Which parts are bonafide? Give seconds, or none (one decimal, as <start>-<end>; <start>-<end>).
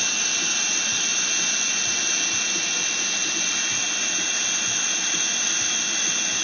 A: 0.0-6.4